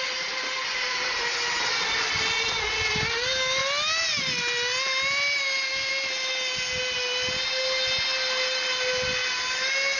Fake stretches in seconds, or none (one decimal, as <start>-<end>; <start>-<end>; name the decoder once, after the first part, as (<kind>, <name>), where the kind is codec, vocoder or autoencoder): none